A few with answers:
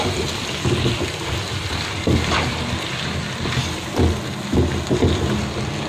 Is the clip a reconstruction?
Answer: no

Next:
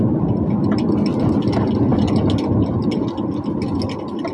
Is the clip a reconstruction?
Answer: no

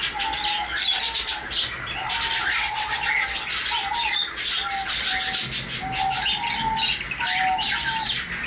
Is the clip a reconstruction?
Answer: no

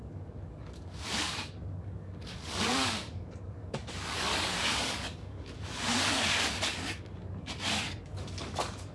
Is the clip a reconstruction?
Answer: yes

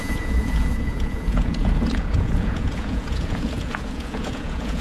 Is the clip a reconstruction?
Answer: yes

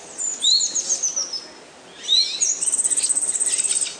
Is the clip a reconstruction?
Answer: no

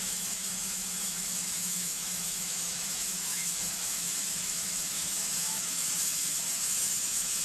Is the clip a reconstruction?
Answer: yes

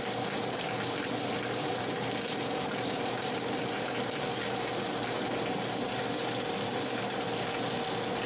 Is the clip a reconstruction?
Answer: no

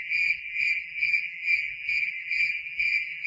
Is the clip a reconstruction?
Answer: yes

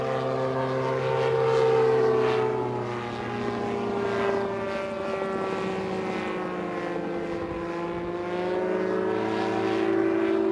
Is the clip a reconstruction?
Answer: no